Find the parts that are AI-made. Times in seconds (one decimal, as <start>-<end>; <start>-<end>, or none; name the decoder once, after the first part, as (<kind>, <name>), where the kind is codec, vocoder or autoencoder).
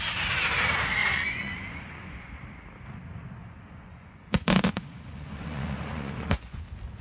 1.0-2.3 (vocoder, Vocos); 3.4-6.6